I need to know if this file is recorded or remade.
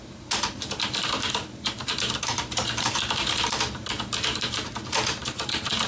remade